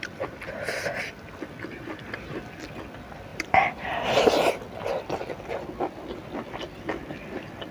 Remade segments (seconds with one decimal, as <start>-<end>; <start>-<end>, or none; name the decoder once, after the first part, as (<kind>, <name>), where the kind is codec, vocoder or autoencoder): 3.3-4.5 (vocoder, BigVGAN v2)